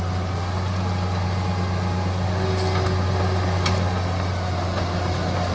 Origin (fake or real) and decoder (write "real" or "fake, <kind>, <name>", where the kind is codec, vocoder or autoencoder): real